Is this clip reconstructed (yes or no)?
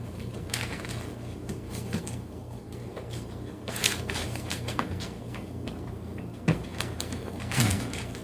yes